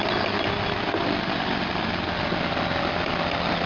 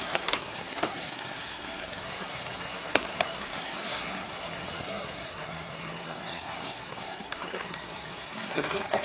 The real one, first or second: first